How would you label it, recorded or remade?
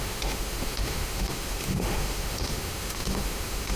remade